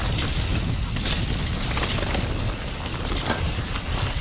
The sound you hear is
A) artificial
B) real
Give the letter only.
B